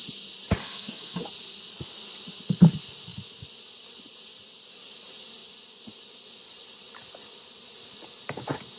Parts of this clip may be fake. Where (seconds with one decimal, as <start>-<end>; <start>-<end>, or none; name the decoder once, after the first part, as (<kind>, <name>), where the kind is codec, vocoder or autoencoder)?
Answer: 0.6-1.2 (codec, SNAC)